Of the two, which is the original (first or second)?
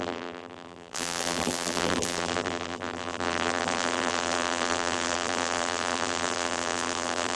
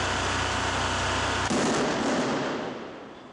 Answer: second